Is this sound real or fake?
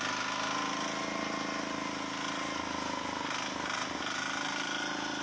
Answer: real